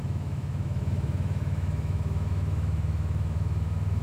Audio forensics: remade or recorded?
remade